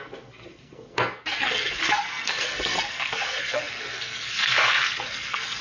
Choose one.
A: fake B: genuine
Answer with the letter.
A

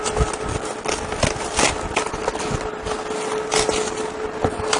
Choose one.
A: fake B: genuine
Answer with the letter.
B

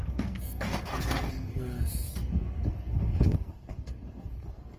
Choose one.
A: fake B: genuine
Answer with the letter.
A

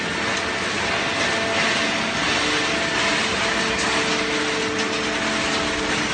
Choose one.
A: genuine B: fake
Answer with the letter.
A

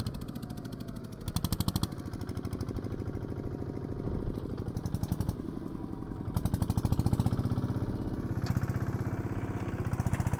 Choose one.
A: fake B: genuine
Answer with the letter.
B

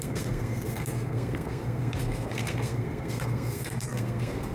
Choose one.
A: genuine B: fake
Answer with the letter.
B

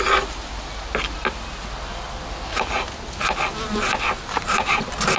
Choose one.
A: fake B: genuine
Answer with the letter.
B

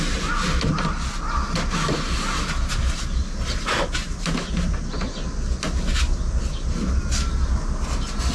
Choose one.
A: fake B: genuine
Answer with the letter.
B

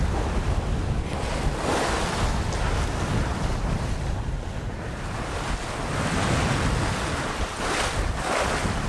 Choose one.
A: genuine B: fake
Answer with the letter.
A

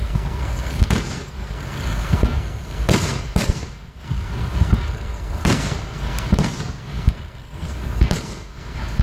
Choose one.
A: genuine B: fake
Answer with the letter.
B